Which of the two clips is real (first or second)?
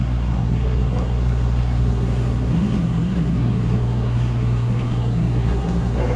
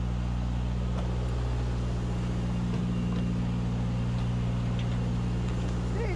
second